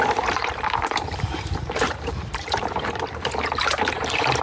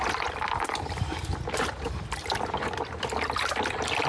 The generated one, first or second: first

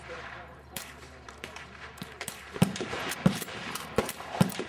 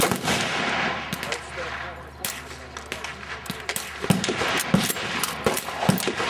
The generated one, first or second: first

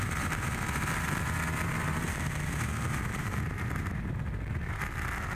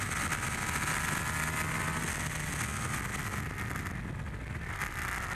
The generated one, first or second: first